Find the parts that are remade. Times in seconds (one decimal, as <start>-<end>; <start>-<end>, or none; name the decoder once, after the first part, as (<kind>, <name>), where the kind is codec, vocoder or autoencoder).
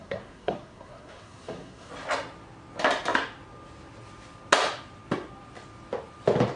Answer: 0.0-1.9 (codec, SNAC)